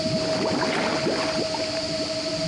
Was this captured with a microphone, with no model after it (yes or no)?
yes